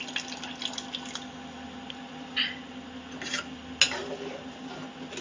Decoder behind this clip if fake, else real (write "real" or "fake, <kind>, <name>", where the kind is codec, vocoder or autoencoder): real